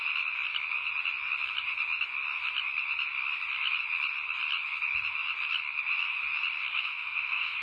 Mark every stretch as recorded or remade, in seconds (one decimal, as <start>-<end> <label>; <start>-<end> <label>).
0.0-6.7 recorded; 6.7-7.6 remade